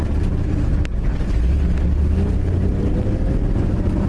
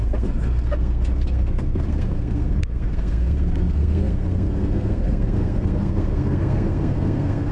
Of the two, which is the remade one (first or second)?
second